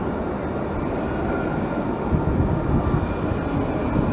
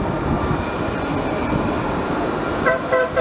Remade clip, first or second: second